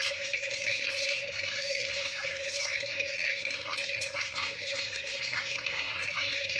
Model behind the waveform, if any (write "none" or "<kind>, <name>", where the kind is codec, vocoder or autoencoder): codec, SNAC